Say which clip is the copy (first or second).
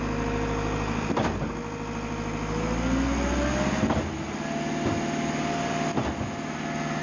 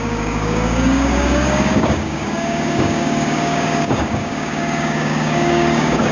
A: second